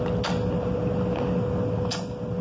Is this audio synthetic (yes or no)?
no